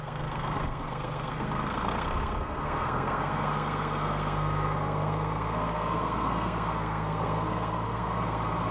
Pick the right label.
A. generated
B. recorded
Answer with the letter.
A